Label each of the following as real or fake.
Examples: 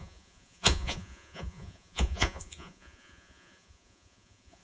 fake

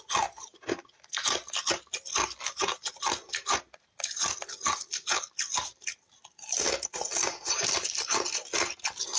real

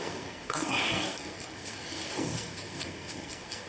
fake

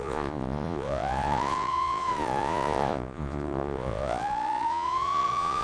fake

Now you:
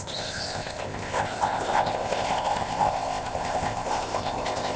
fake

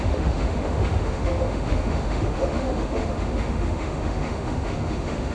fake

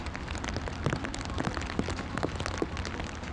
real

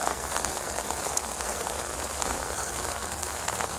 fake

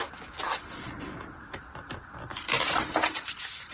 real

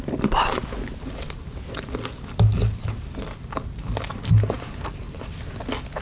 real